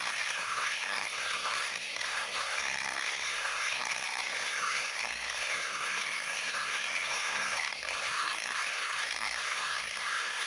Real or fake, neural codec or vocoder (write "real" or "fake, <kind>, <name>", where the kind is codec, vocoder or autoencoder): fake, codec, SNAC